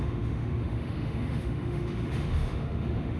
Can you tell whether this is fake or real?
fake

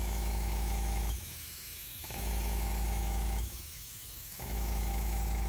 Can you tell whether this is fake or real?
fake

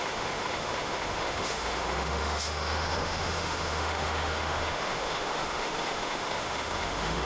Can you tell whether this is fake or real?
fake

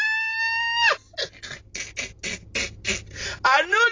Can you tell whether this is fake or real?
real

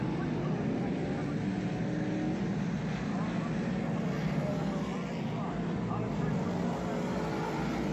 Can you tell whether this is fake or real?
real